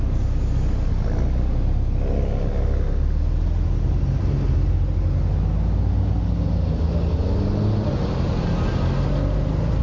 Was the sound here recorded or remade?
recorded